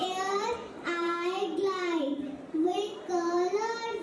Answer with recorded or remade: remade